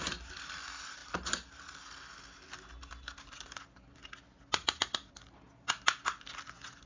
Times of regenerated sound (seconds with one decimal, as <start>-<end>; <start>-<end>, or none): none